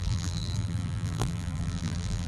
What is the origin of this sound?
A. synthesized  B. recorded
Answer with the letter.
A